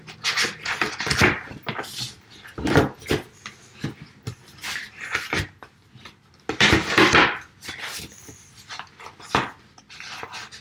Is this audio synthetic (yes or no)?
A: no